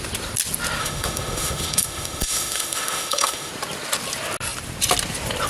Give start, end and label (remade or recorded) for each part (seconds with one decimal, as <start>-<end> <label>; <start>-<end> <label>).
0.0-0.8 recorded; 0.8-3.5 remade; 3.5-5.5 recorded